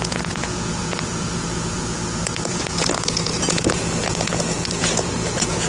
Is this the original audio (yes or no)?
no